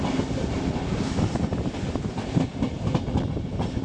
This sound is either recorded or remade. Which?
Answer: recorded